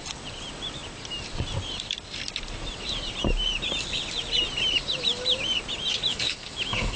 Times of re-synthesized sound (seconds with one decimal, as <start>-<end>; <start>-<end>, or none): 6.1-7.0